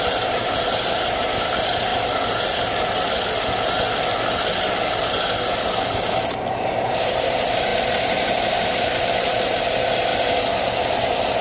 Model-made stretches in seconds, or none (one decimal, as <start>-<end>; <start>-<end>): 0.0-1.9; 6.9-10.1; 10.9-11.4